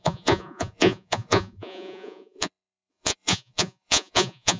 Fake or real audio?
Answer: fake